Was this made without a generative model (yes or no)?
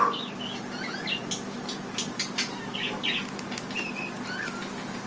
yes